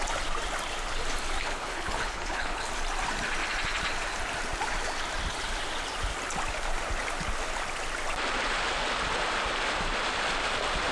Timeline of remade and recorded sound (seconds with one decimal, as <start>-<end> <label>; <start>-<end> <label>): 0.0-1.4 recorded; 1.4-2.7 remade; 2.7-10.9 recorded